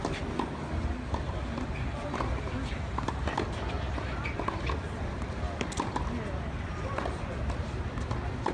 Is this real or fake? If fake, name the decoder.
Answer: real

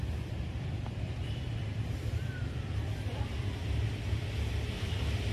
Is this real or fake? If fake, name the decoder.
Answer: fake, vocoder, BigVGAN v2